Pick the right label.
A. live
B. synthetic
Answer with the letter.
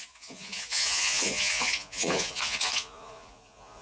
B